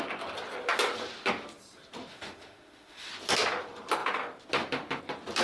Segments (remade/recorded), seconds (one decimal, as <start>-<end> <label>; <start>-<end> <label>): 0.0-2.1 recorded; 2.1-3.1 remade; 3.1-5.4 recorded